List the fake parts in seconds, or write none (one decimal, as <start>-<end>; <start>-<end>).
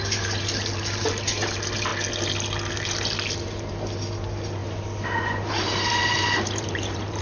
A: 0.0-1.9; 3.3-7.2